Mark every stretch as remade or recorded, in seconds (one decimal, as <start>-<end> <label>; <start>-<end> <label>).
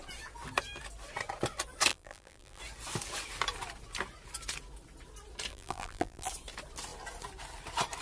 0.0-1.9 recorded; 1.9-2.6 remade; 2.6-5.5 recorded; 5.5-6.3 remade; 6.3-8.0 recorded